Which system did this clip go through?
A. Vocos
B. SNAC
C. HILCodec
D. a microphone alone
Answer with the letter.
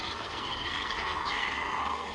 B